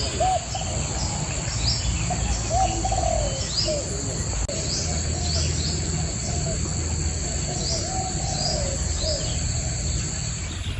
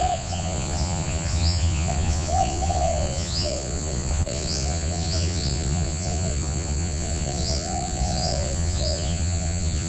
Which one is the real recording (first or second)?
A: first